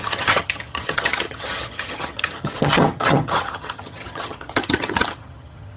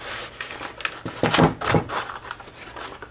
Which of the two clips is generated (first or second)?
first